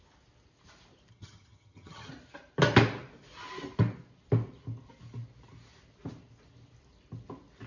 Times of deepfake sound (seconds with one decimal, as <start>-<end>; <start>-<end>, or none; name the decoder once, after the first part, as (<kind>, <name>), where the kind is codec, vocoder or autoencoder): 1.1-2.1 (vocoder, HiFi-GAN)